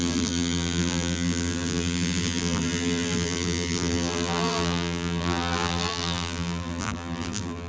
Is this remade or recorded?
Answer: remade